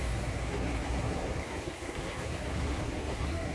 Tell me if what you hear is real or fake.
fake